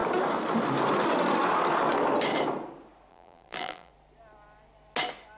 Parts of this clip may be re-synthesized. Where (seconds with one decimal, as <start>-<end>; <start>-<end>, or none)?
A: 3.1-3.9